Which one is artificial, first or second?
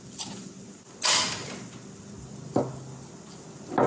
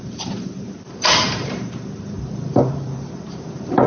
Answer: second